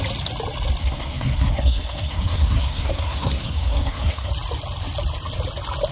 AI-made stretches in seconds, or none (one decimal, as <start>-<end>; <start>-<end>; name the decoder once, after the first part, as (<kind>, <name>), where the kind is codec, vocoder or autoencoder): 0.8-4.3 (codec, SNAC)